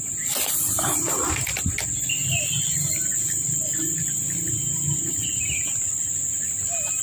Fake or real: real